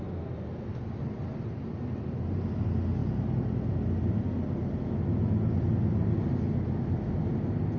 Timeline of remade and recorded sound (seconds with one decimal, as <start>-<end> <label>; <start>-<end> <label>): 0.0-7.8 recorded